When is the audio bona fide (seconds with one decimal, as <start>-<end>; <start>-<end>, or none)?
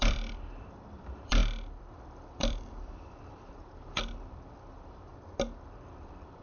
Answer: 5.1-6.0